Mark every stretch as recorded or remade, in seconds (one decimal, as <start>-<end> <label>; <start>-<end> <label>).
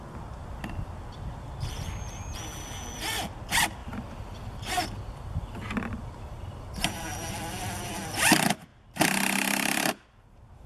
0.0-10.7 recorded